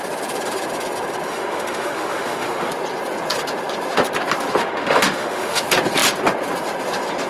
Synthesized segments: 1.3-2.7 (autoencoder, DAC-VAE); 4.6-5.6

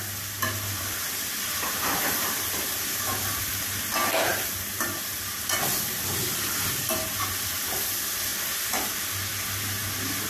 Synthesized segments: none

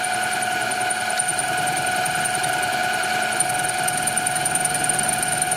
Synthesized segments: 0.0-5.6 (vocoder, BigVGAN v2)

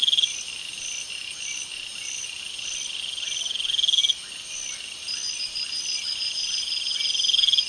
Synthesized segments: none

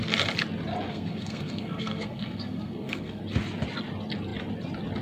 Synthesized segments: 0.9-3.2 (codec, SNAC)

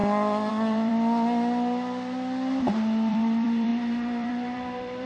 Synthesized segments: 0.5-0.9 (vocoder, BigVGAN v2); 3.1-5.1

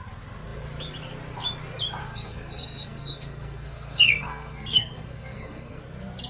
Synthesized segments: 2.0-5.8 (codec, SNAC)

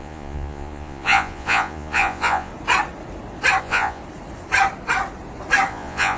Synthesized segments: 0.0-2.5 (vocoder, Vocos); 3.6-4.0; 5.7-6.2